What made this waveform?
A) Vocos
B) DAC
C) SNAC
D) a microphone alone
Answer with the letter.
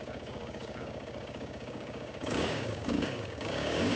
B